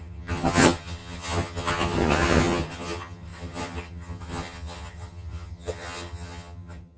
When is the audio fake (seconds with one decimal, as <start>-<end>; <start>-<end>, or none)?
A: 0.0-7.0